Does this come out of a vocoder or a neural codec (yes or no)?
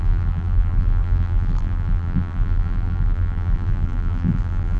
yes